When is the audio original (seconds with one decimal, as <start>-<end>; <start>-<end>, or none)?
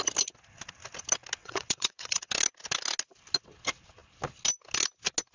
0.0-1.4; 2.3-5.3